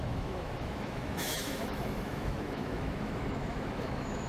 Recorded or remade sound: remade